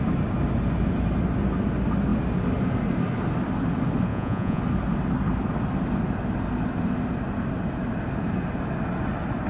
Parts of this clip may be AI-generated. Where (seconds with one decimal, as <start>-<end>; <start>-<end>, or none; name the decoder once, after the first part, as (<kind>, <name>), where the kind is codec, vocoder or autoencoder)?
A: 4.1-4.6 (vocoder, Vocos)